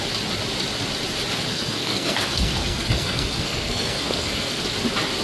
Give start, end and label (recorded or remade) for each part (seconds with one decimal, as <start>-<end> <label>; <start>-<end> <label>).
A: 0.0-1.5 recorded; 1.5-4.6 remade; 4.6-5.2 recorded